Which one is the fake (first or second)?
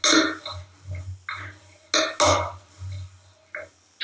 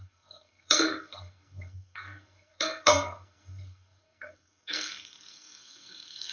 second